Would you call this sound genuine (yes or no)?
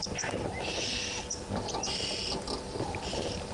no